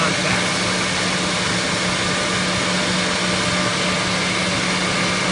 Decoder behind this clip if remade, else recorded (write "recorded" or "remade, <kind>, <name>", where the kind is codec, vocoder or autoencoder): recorded